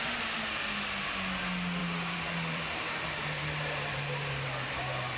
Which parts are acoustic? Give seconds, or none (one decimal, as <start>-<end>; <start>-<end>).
0.0-1.8

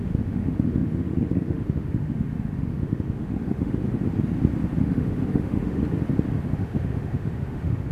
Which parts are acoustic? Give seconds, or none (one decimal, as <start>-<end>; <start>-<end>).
3.8-4.8; 5.8-6.5

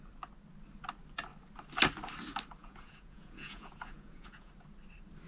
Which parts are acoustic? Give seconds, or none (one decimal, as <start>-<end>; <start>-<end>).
0.0-2.6; 4.5-5.3

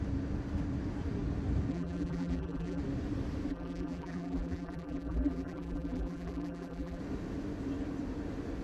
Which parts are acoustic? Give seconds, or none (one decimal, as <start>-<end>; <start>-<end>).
0.0-1.7; 2.8-3.5; 7.0-8.6